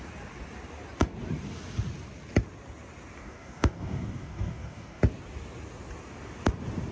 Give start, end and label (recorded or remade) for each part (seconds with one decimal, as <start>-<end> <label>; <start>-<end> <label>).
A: 0.0-3.2 recorded; 3.2-5.0 remade; 5.0-6.9 recorded